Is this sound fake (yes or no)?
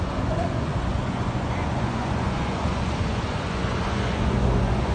yes